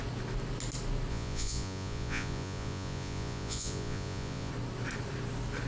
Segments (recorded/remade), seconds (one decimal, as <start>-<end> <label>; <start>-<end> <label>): 0.0-1.1 recorded; 1.1-4.5 remade; 4.5-5.7 recorded